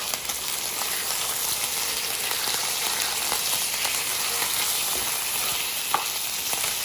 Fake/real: real